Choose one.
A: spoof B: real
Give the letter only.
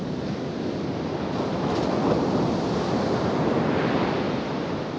B